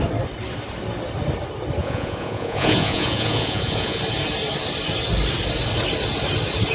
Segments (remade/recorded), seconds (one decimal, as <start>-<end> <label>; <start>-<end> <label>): 0.0-1.8 recorded; 1.8-4.0 remade; 4.0-6.7 recorded